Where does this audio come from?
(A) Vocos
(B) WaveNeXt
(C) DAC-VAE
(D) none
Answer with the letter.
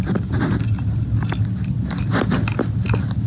D